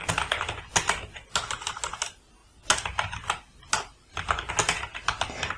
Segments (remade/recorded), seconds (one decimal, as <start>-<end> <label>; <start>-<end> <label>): 0.0-5.6 recorded